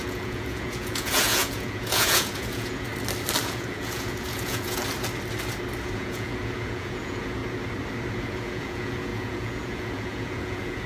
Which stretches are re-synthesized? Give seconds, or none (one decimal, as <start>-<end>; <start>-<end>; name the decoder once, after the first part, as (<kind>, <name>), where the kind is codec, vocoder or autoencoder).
0.0-2.9 (vocoder, Vocos); 3.4-4.8; 5.8-7.4; 8.2-10.9